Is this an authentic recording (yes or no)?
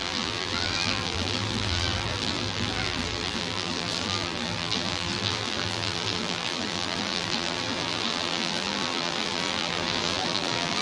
no